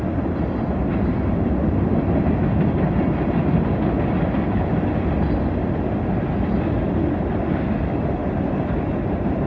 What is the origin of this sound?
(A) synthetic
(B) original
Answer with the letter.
B